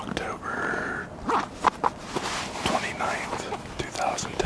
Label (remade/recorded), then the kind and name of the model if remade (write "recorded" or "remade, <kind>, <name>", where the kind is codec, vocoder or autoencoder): recorded